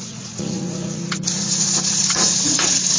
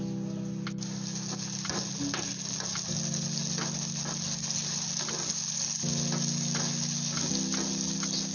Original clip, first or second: second